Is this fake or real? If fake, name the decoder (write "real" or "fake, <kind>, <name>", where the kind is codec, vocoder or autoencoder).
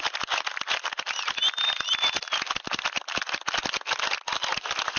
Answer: real